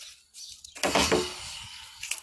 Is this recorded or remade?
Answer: recorded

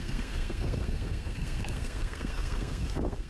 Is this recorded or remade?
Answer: remade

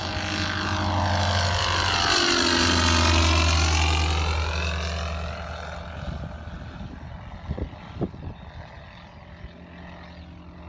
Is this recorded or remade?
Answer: recorded